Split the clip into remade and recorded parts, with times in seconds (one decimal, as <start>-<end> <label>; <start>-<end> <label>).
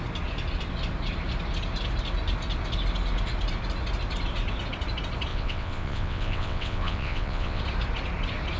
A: 0.0-5.3 recorded; 5.3-7.6 remade; 7.6-8.6 recorded